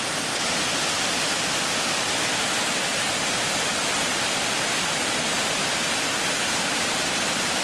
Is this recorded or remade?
recorded